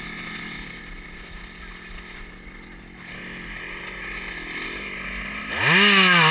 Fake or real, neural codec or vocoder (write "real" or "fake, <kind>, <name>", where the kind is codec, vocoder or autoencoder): real